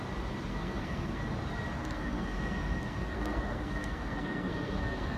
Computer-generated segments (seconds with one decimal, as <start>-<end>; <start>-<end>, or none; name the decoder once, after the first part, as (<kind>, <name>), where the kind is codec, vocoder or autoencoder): 0.5-1.2 (codec, SNAC); 1.8-5.2